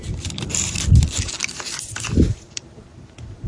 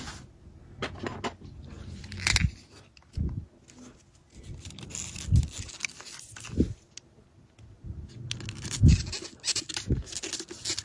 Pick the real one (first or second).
second